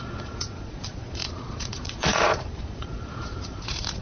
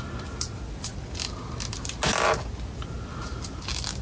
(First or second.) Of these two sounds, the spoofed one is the first